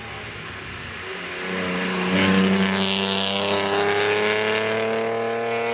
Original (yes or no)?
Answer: yes